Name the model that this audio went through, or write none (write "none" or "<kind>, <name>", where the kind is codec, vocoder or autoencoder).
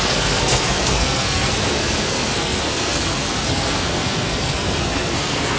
codec, SNAC